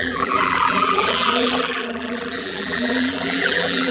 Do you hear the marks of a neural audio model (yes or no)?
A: yes